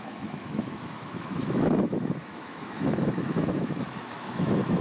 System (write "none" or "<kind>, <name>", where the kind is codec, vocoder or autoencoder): autoencoder, DAC-VAE